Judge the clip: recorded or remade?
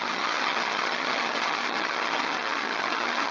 remade